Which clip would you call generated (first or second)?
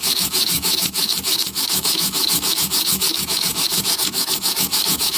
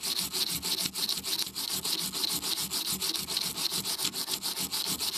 first